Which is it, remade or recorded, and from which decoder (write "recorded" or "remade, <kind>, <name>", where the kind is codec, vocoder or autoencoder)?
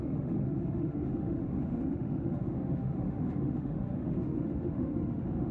remade, autoencoder, DAC-VAE